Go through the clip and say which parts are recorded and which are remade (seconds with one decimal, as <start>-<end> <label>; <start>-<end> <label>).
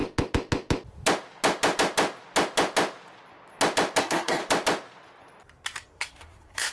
0.0-4.0 recorded; 4.0-4.4 remade; 4.4-5.9 recorded; 5.9-6.7 remade